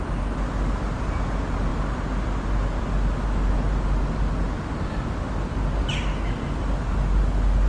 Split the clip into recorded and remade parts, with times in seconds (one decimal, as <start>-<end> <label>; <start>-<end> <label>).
0.0-7.7 recorded